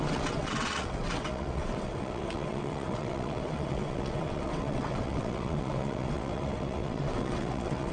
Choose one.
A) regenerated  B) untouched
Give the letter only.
A